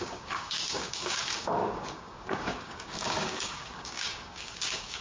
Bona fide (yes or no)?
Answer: no